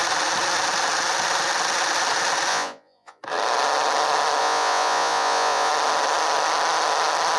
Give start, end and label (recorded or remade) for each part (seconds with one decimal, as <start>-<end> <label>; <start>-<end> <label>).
0.0-2.5 recorded; 2.5-3.2 remade; 3.2-4.4 recorded; 4.4-5.7 remade; 5.7-7.4 recorded